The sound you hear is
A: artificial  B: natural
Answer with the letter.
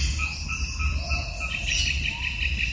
B